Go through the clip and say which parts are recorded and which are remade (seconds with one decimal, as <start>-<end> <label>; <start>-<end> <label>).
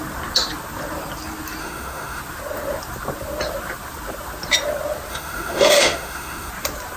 0.0-1.6 recorded; 1.6-2.2 remade; 2.2-5.1 recorded; 5.1-6.5 remade; 6.5-7.0 recorded